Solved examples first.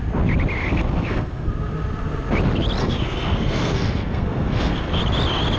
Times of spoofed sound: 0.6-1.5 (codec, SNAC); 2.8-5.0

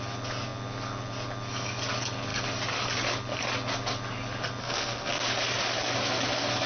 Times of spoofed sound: 4.6-5.2 (codec, SNAC)

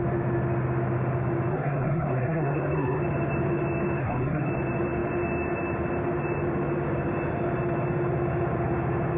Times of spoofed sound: 1.5-3.0 (codec, SNAC); 4.0-4.5

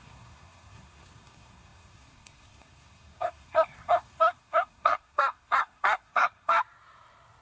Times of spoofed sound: 0.0-6.5 (codec, SNAC)

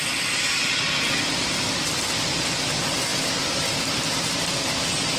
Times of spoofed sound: none

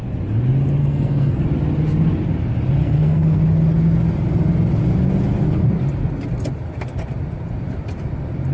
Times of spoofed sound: 0.8-1.4 (codec, SNAC); 2.8-3.4